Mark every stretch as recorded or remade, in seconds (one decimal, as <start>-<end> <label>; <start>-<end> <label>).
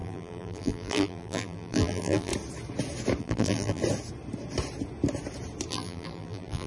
0.0-2.3 remade; 2.3-3.2 recorded; 3.2-3.8 remade; 3.8-5.7 recorded; 5.7-6.7 remade